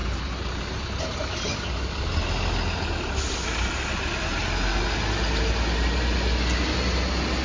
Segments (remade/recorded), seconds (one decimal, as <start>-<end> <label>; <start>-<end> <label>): 0.0-0.6 remade; 0.6-7.4 recorded